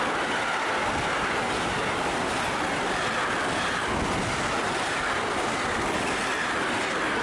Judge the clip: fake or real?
real